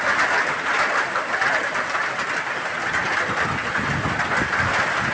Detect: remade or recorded recorded